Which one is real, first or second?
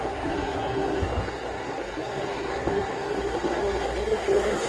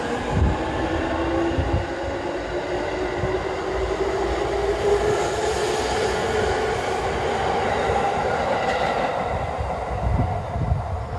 second